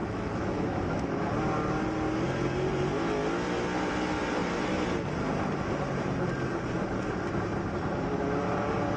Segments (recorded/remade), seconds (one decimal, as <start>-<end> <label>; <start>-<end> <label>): 0.0-1.3 remade; 1.3-9.0 recorded